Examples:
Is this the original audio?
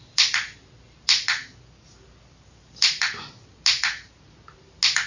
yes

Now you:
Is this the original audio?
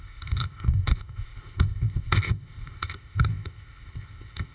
no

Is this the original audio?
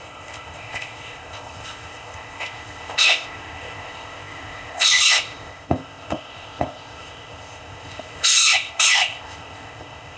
no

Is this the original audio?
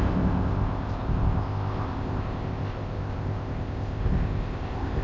no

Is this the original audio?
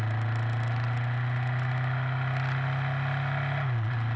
yes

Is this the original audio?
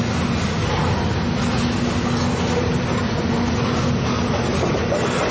yes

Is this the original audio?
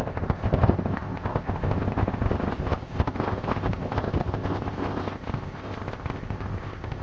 no